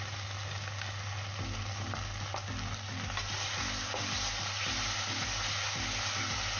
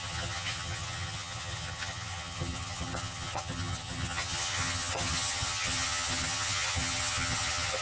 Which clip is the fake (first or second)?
second